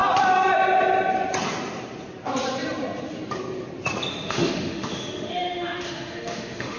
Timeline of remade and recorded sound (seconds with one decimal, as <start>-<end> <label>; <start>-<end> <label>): 0.0-4.1 recorded; 4.1-6.8 remade